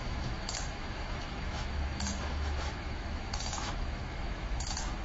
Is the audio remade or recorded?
remade